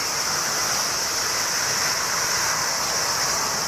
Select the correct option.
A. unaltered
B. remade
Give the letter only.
A